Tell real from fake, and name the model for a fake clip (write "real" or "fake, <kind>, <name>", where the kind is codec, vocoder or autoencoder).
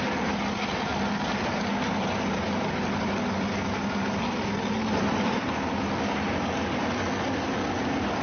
real